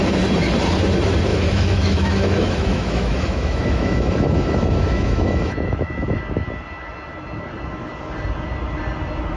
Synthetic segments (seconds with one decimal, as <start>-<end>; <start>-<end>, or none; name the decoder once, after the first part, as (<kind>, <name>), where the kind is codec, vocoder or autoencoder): 1.3-6.2 (autoencoder, DAC-VAE)